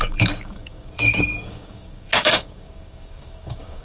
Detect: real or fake fake